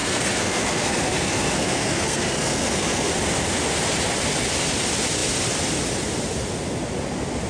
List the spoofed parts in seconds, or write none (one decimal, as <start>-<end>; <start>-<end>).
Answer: 0.0-3.1